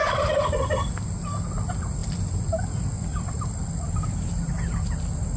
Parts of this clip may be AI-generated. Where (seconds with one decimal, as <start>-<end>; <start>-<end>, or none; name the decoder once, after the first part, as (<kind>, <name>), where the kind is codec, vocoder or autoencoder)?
0.0-0.7 (vocoder, BigVGAN v2); 3.1-4.1